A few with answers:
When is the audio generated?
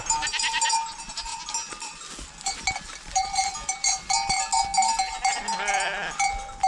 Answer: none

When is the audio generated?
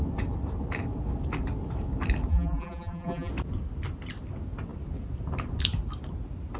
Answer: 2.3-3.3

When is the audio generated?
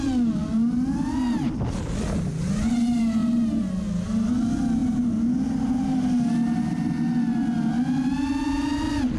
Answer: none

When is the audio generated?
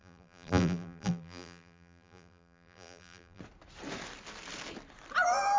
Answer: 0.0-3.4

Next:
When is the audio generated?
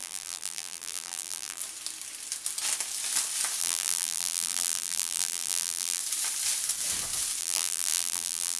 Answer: 0.0-1.6; 3.6-6.0; 7.4-8.6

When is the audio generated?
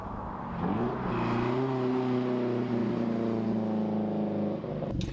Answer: none